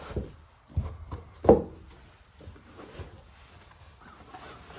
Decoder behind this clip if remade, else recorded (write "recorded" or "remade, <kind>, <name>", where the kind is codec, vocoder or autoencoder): recorded